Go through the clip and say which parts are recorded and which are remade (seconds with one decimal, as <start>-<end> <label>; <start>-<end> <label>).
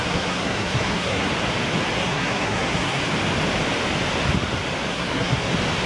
0.0-1.3 remade; 1.3-2.0 recorded; 2.0-3.0 remade; 3.0-4.9 recorded; 4.9-5.5 remade; 5.5-5.9 recorded